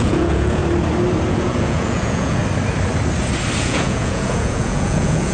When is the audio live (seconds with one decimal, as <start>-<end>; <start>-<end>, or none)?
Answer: 0.6-1.3; 2.4-3.6